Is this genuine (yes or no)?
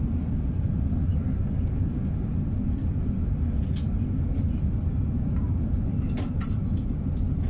yes